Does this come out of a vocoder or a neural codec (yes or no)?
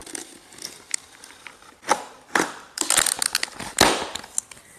no